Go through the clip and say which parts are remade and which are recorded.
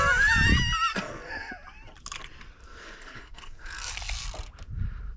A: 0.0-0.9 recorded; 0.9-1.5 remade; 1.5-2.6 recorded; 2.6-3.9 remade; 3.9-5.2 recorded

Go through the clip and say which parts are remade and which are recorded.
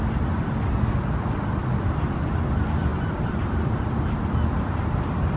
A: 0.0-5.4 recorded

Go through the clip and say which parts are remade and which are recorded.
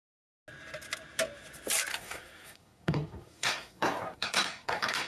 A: 0.0-1.9 recorded; 1.9-5.1 remade